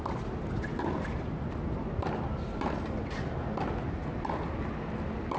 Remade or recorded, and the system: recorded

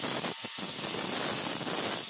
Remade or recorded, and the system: recorded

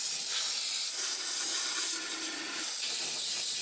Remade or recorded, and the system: recorded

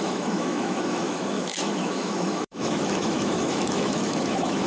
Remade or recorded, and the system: remade, autoencoder, DAC-VAE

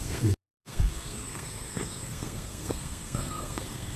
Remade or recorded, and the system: remade, codec, SNAC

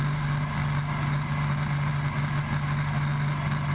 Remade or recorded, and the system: recorded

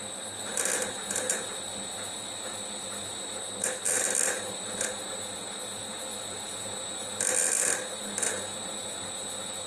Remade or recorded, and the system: recorded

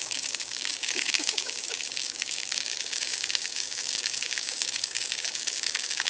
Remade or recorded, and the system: remade, codec, DAC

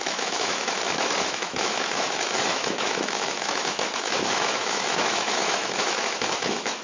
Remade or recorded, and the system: remade, autoencoder, DAC-VAE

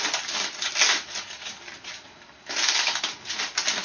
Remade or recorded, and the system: recorded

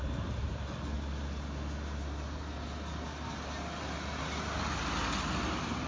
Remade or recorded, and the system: recorded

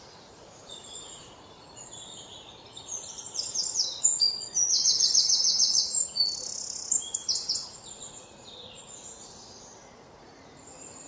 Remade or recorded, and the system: remade, vocoder, Vocos